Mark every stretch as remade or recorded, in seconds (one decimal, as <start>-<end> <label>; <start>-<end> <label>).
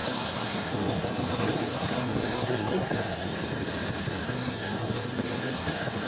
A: 0.0-3.3 remade; 3.3-4.0 recorded; 4.0-6.1 remade